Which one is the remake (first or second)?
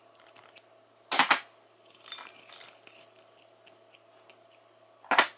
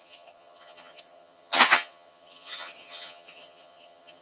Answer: second